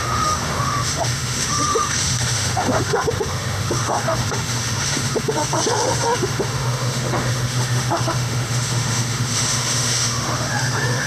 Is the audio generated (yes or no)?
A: yes